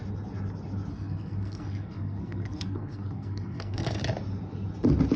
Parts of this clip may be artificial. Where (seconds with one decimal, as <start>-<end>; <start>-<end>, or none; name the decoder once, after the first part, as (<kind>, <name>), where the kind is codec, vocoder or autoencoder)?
0.9-4.0 (codec, SNAC)